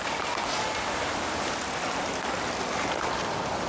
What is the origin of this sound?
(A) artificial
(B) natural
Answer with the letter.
B